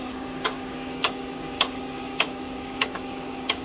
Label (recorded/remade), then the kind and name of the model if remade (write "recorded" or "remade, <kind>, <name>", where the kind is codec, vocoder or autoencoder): remade, codec, DAC